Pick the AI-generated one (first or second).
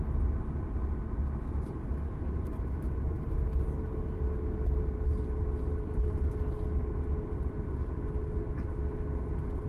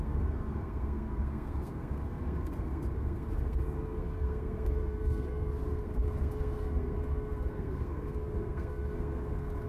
second